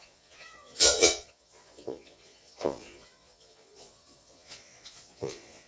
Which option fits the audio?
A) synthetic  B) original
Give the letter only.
A